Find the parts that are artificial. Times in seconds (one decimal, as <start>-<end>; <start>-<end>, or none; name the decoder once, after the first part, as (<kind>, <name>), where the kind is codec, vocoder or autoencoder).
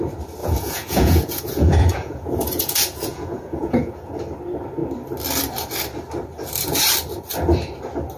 0.4-4.1 (vocoder, Vocos)